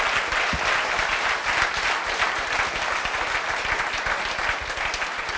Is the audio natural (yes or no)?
yes